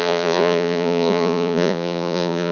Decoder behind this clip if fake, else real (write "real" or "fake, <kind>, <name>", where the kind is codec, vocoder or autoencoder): fake, vocoder, Vocos